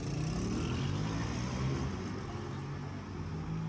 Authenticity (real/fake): real